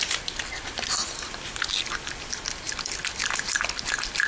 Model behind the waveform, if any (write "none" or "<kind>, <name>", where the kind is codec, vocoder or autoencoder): none